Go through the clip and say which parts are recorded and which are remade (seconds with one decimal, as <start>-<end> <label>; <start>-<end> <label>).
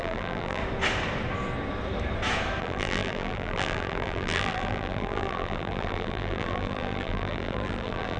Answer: 0.0-0.6 remade; 0.6-2.6 recorded; 2.6-8.2 remade